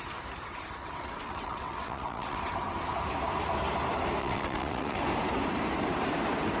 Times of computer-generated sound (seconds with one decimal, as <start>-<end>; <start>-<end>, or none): 0.8-2.4; 4.2-5.0